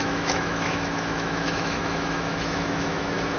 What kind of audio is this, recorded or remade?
remade